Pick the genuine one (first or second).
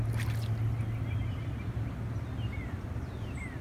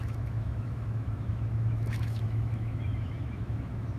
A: first